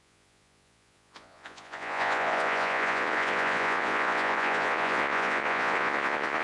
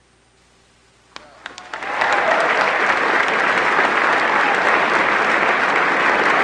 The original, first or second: second